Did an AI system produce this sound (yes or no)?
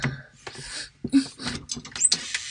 no